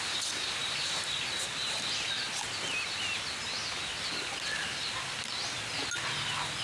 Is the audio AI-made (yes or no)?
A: no